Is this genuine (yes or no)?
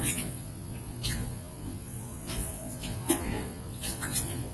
no